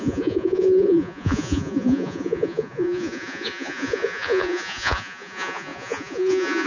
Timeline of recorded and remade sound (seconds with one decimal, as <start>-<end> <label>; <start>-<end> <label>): 0.0-6.7 remade